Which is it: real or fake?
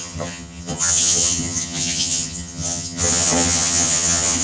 fake